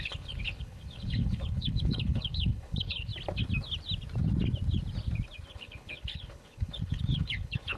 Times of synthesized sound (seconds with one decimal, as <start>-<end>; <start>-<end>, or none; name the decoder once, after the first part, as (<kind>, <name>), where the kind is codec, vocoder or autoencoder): 0.0-3.1 (codec, HILCodec); 5.5-7.8